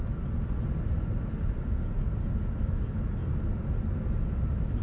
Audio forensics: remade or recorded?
recorded